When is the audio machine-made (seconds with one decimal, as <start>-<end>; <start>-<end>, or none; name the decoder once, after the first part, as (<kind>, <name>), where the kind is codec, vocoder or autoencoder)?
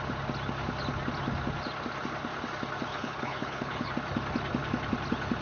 2.9-3.9 (codec, HILCodec)